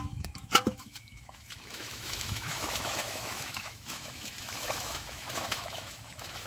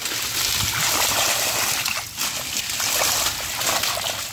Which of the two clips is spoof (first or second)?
first